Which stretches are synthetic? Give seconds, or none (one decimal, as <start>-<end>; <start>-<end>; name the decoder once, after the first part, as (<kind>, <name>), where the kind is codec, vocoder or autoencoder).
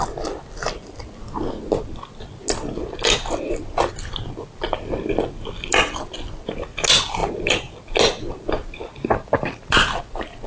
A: none